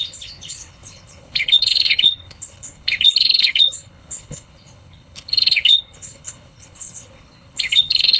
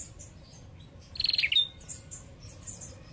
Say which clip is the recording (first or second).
second